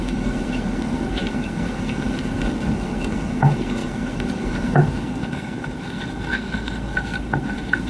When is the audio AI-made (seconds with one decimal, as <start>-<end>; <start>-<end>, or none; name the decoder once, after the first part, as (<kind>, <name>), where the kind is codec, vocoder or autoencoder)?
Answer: 0.0-7.9 (codec, SNAC)